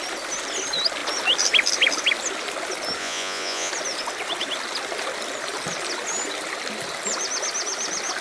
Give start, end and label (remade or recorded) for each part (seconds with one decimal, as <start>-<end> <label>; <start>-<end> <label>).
0.0-3.0 recorded; 3.0-3.7 remade; 3.7-8.2 recorded